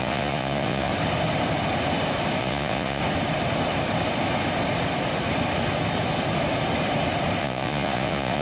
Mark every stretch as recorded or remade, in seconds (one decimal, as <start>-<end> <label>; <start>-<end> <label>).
0.0-0.9 remade; 0.9-2.4 recorded; 2.4-3.0 remade; 3.0-7.4 recorded; 7.4-8.4 remade